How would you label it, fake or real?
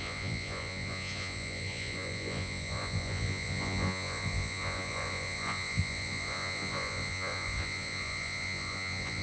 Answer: fake